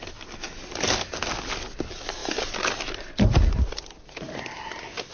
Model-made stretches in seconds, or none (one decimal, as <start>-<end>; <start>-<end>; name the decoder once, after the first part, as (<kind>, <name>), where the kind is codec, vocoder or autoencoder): none